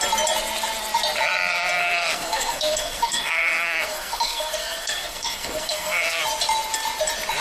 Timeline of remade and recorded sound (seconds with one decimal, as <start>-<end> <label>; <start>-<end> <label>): 0.0-1.8 recorded; 1.8-6.2 remade; 6.2-7.4 recorded